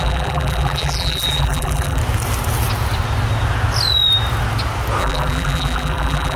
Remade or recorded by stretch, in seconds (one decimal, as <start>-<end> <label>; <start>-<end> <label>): 0.0-2.0 remade; 2.0-5.0 recorded; 5.0-6.4 remade